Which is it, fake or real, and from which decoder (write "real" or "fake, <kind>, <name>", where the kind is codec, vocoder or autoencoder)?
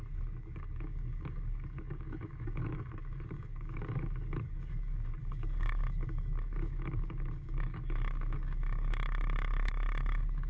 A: fake, codec, DAC